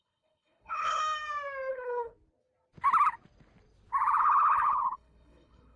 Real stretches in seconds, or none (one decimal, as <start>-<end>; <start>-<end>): 1.0-1.7; 2.1-4.2